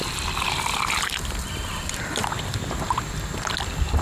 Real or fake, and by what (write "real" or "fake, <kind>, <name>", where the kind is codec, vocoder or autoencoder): real